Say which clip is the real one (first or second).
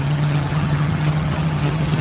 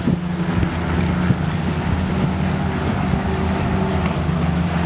second